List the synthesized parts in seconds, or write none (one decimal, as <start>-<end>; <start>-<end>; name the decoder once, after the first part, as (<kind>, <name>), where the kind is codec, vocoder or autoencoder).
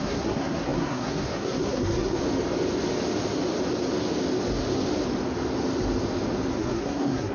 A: 0.0-2.2 (codec, SNAC); 6.6-7.3